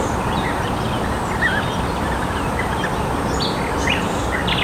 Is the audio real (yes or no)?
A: yes